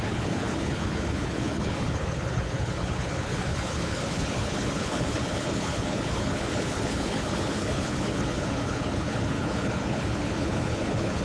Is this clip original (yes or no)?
no